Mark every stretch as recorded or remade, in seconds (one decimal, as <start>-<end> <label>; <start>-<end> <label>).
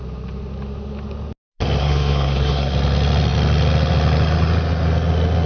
0.0-1.8 recorded; 1.8-2.7 remade; 2.7-5.5 recorded